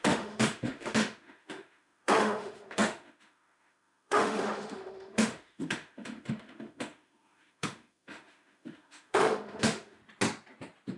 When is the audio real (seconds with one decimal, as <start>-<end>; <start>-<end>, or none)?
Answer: 10.0-11.0